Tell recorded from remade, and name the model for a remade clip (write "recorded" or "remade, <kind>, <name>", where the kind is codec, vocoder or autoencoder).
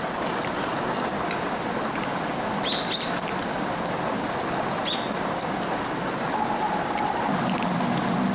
recorded